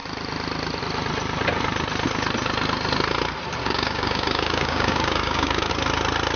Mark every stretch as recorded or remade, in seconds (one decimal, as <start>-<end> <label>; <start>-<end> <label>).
0.0-3.6 recorded; 3.6-5.7 remade; 5.7-6.4 recorded